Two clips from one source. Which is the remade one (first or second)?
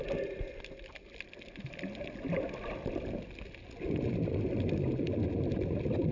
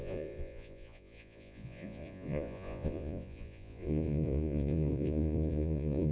second